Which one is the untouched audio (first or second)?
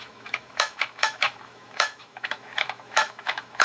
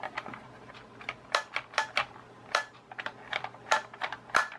second